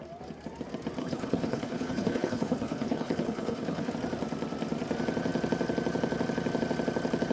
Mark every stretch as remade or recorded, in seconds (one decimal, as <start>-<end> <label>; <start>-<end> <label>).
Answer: 0.0-1.0 recorded; 1.0-3.9 remade; 3.9-7.3 recorded